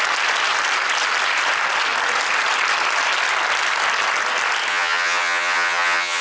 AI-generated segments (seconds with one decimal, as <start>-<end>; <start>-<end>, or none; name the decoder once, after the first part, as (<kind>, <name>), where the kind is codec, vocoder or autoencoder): 4.7-6.2 (vocoder, HiFi-GAN)